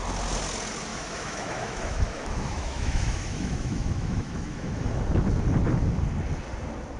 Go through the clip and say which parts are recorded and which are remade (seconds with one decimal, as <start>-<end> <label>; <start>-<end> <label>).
0.0-0.9 recorded; 0.9-5.0 remade; 5.0-7.0 recorded